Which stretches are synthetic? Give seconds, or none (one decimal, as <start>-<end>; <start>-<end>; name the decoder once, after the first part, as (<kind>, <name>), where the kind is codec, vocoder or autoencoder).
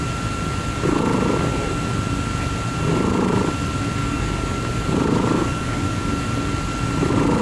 4.0-6.1 (codec, DAC)